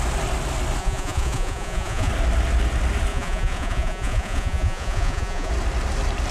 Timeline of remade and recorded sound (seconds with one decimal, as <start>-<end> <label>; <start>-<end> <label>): 0.0-0.8 recorded; 0.8-2.1 remade; 2.1-3.1 recorded; 3.1-5.5 remade; 5.5-6.3 recorded